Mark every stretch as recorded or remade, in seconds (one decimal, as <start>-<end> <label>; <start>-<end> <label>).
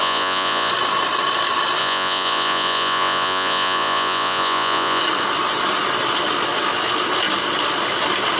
0.0-0.7 remade; 0.7-1.8 recorded; 1.8-5.0 remade; 5.0-8.4 recorded